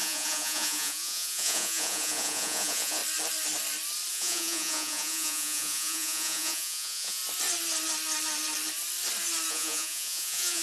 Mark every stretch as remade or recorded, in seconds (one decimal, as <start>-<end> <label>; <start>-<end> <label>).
0.0-3.0 remade; 3.0-4.1 recorded; 4.1-7.2 remade; 7.2-9.5 recorded; 9.5-10.6 remade

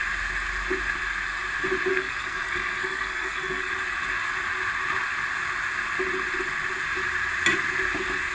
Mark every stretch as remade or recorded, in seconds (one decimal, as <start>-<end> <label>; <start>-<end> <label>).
0.0-1.9 recorded; 1.9-3.7 remade; 3.7-8.3 recorded

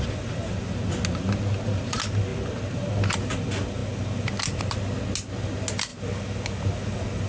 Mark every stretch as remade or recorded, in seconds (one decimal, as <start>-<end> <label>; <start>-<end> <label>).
0.0-7.3 recorded

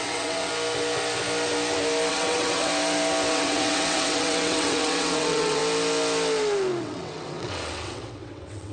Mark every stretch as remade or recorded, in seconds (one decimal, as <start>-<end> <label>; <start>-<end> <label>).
0.0-0.5 remade; 0.5-2.1 recorded; 2.1-2.7 remade; 2.7-3.3 recorded; 3.3-5.6 remade; 5.6-6.8 recorded; 6.8-8.7 remade

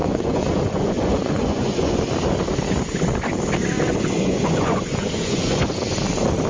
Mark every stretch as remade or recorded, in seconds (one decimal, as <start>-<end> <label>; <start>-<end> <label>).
0.0-2.0 remade; 2.0-3.9 recorded; 3.9-5.8 remade; 5.8-6.5 recorded

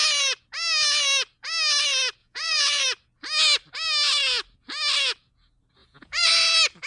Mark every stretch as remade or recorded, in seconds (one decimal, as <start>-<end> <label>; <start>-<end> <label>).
0.0-2.2 recorded; 2.2-2.8 remade; 2.8-5.8 recorded; 5.8-6.3 remade; 6.3-6.9 recorded

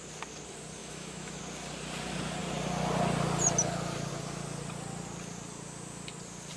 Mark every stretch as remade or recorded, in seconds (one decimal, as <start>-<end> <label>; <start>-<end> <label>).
0.0-0.8 recorded; 0.8-1.4 remade; 1.4-6.6 recorded

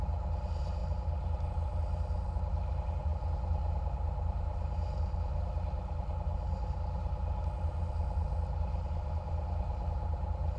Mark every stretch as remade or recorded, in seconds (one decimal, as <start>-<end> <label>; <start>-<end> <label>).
0.0-10.6 recorded